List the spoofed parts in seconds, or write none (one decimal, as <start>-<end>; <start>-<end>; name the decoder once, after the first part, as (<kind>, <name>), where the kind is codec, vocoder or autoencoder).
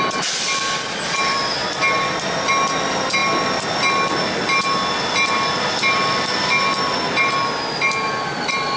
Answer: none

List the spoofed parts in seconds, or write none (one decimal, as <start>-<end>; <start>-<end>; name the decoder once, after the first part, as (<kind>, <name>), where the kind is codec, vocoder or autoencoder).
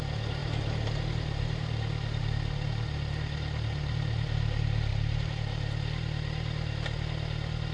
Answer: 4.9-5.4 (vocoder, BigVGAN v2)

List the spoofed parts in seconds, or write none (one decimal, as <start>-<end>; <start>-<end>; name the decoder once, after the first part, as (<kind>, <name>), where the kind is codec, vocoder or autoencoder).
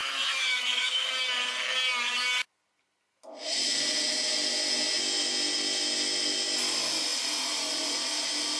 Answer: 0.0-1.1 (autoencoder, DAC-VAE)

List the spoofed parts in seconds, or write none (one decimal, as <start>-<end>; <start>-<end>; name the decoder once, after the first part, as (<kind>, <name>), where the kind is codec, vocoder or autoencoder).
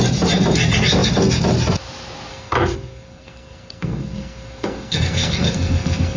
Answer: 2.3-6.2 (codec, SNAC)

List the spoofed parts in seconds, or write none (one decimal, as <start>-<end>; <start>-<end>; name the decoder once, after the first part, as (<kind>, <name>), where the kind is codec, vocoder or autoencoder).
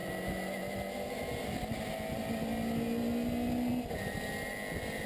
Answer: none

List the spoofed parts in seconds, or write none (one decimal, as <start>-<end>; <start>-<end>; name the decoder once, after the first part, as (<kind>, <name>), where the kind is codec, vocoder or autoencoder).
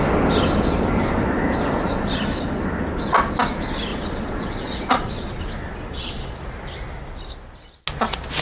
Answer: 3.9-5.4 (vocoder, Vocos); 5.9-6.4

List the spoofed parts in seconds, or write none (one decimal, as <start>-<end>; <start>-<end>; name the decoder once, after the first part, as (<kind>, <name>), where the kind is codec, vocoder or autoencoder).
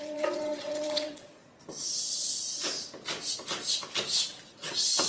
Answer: 0.0-1.4 (vocoder, WaveNeXt); 4.5-5.1